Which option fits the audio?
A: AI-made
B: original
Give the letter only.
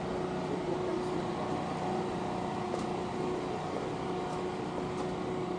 B